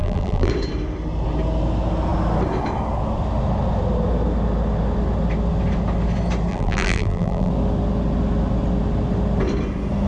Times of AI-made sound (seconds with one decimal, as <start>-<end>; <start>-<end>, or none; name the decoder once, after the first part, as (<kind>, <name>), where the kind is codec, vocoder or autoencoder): 0.0-0.5 (vocoder, BigVGAN v2); 6.5-7.5